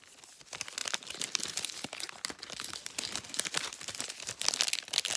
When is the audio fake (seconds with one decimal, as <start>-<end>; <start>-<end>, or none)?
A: none